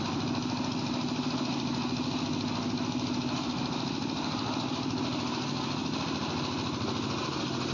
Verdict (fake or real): real